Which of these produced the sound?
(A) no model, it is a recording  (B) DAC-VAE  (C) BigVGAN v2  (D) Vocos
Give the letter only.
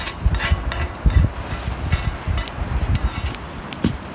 A